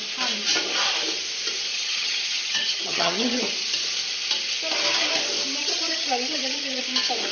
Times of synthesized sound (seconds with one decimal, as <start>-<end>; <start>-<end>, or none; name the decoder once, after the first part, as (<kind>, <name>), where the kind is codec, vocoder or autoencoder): 1.7-3.4 (vocoder, HiFi-GAN); 5.6-6.8